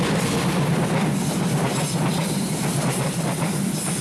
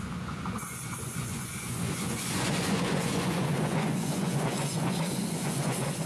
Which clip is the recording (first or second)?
first